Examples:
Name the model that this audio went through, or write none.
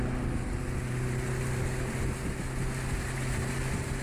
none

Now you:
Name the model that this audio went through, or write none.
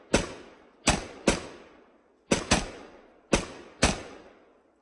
none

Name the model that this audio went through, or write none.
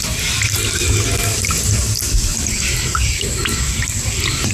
none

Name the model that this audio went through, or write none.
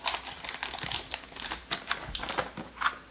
none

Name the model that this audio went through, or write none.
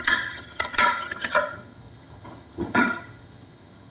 vocoder, HiFi-GAN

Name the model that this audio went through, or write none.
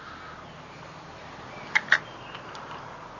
none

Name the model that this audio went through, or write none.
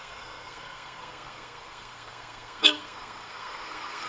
codec, SNAC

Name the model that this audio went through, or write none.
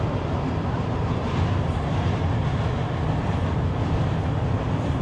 none